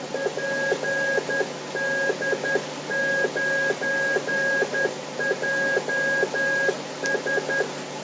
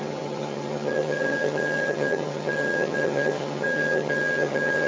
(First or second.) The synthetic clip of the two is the second